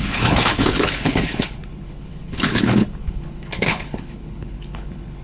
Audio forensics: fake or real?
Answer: fake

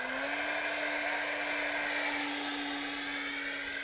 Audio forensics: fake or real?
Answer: real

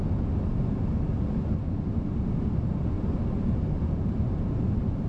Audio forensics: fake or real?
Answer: real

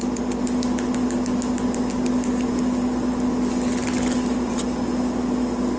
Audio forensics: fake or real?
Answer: real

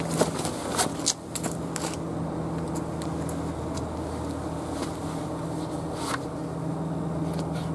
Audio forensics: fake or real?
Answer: real